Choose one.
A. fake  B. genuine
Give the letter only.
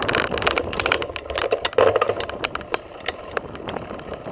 B